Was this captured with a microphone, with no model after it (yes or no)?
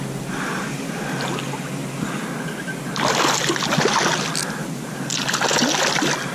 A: yes